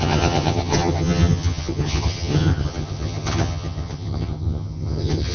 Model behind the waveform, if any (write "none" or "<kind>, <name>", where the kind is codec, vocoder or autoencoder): vocoder, HiFi-GAN